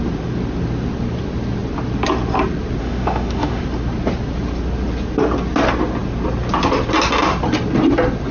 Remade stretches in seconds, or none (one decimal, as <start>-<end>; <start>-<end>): 2.8-3.6